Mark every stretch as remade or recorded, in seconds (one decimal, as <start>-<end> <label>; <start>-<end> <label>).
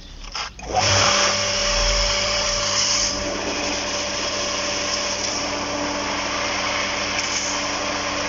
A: 0.0-8.3 remade